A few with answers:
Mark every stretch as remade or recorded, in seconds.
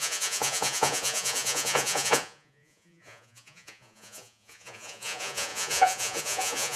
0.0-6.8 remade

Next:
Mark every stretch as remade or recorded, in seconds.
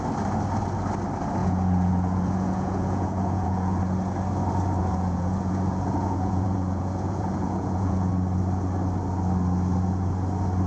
0.0-1.4 recorded; 1.4-3.8 remade; 3.8-4.8 recorded; 4.8-8.1 remade; 8.1-10.7 recorded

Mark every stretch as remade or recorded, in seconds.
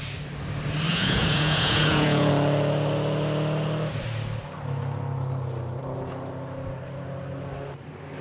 0.0-0.9 recorded; 0.9-2.3 remade; 2.3-8.2 recorded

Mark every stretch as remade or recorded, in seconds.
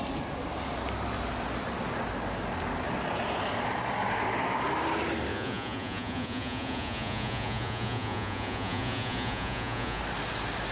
0.0-5.3 recorded; 5.3-10.0 remade; 10.0-10.7 recorded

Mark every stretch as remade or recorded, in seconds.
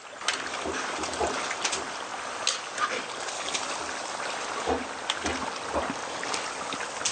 0.0-7.1 recorded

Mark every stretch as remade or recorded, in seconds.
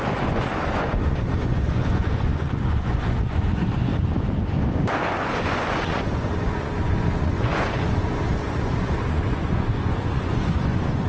0.0-3.9 remade; 3.9-4.9 recorded; 4.9-11.1 remade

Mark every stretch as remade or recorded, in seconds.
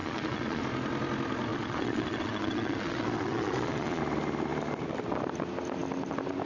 0.0-0.6 remade; 0.6-1.5 recorded; 1.5-4.0 remade; 4.0-6.5 recorded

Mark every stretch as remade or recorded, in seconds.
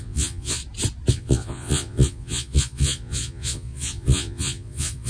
0.0-0.6 remade; 0.6-1.1 recorded; 1.1-5.1 remade